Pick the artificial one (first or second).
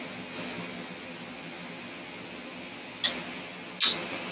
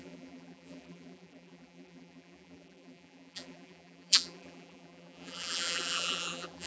second